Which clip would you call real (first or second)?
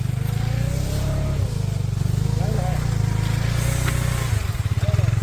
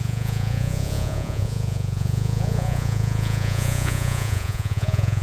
first